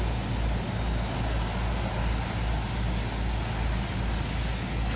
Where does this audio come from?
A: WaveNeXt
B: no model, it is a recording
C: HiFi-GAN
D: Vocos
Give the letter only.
B